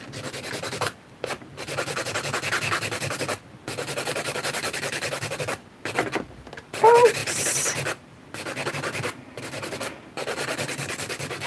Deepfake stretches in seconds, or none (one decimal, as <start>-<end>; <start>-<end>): none